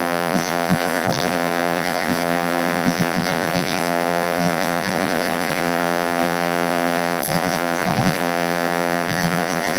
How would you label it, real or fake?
fake